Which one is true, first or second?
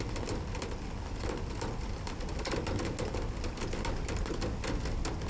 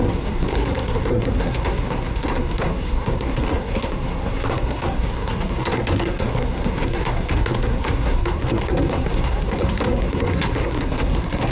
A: first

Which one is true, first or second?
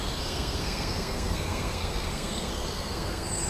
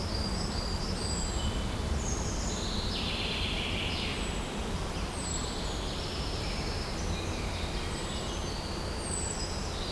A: second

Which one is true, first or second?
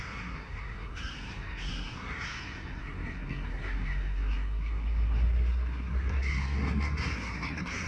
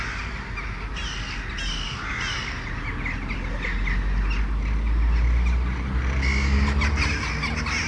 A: second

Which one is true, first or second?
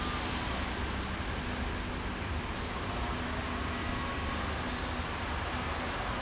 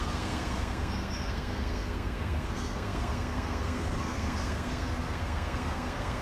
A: first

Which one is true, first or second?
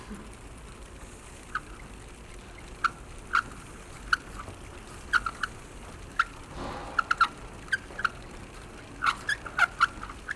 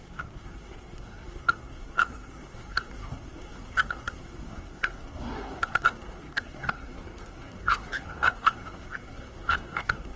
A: first